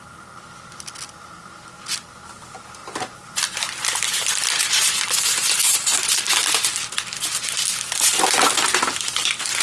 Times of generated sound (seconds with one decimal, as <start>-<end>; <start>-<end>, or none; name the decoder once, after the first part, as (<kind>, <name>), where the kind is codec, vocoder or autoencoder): 2.8-4.3 (vocoder, BigVGAN v2)